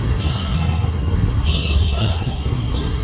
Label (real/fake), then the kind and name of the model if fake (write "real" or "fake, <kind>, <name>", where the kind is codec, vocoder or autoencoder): fake, codec, SNAC